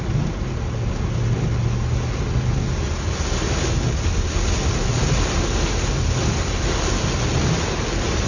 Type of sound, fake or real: real